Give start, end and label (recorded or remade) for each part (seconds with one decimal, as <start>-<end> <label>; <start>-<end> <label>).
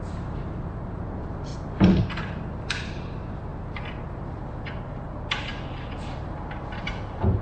0.0-1.5 remade; 1.5-2.2 recorded; 2.2-3.5 remade; 3.5-4.2 recorded; 4.2-5.5 remade; 5.5-6.2 recorded; 6.2-7.4 remade